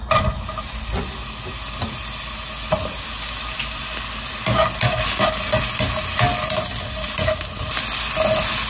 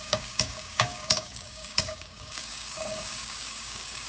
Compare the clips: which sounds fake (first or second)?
second